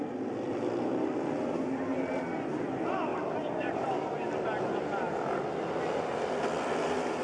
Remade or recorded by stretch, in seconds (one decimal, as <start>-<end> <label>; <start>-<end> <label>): 0.0-7.2 recorded